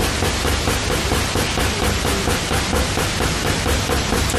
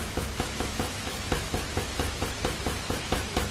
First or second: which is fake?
second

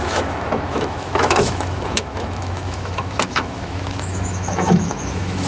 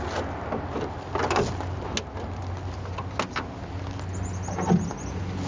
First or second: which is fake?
first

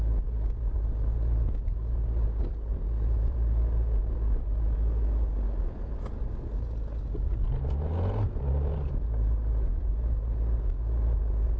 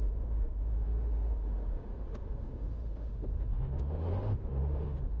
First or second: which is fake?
second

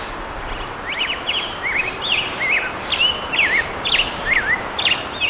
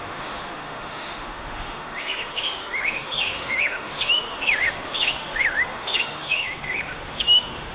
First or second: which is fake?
second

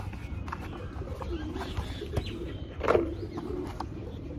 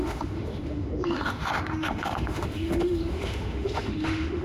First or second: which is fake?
second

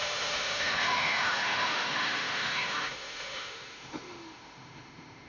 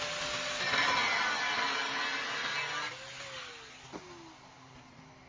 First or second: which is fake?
first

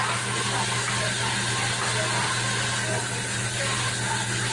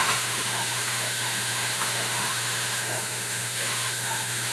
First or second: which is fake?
second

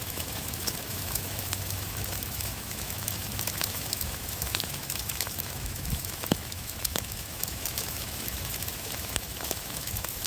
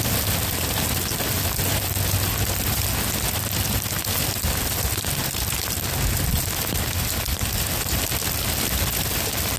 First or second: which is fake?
first